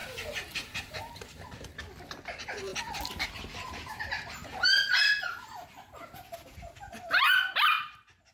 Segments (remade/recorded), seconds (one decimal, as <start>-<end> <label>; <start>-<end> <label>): 0.0-1.8 remade; 1.8-8.3 recorded